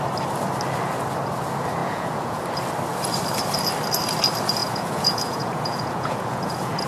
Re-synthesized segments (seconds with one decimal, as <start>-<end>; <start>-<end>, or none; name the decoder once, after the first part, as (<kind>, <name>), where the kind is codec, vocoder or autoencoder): 1.8-2.4 (vocoder, Vocos); 4.6-6.9